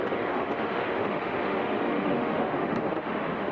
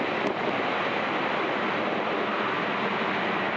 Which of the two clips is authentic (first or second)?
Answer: second